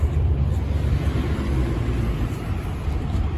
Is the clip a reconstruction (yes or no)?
yes